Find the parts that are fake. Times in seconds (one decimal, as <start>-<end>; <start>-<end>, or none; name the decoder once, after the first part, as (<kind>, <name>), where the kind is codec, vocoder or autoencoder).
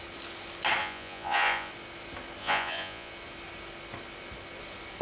0.8-1.7 (vocoder, Vocos); 2.4-3.1